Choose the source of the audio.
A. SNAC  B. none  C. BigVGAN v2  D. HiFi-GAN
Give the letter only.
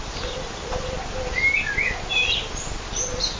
B